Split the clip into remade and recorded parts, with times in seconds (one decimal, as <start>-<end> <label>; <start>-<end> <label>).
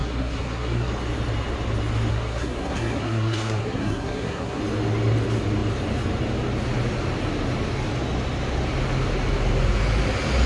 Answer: 0.0-0.9 remade; 0.9-2.1 recorded; 2.1-4.6 remade; 4.6-10.5 recorded